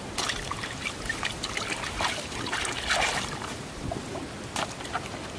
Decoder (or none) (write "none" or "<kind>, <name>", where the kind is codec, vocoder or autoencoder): none